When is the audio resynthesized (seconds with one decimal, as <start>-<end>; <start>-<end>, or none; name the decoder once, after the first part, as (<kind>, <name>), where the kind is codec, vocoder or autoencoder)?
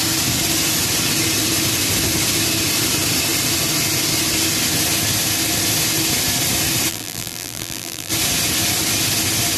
6.9-8.1 (vocoder, BigVGAN v2)